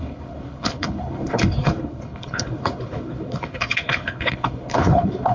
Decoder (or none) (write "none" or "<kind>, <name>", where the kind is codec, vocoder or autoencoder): codec, HILCodec